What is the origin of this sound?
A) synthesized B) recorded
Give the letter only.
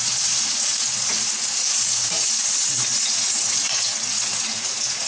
A